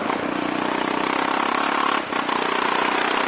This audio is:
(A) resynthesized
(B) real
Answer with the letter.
A